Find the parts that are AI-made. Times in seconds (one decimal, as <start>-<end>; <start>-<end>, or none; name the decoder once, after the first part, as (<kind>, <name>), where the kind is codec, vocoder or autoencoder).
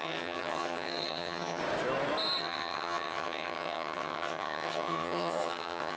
0.0-1.6 (vocoder, HiFi-GAN); 2.4-6.0